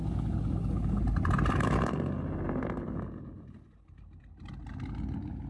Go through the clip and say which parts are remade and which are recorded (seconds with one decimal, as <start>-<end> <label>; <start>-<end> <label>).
0.0-1.0 remade; 1.0-5.5 recorded